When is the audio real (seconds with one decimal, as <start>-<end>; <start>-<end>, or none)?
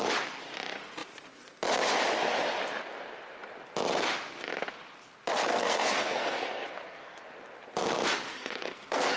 0.0-5.5; 7.2-8.3